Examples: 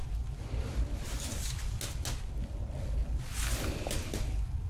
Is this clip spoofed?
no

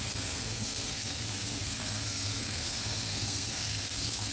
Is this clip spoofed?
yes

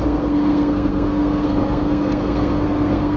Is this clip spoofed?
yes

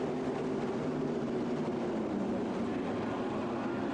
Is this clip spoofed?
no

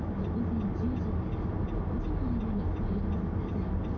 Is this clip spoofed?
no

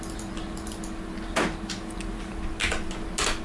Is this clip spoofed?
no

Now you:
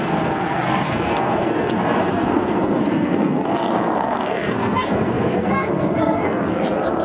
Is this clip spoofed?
yes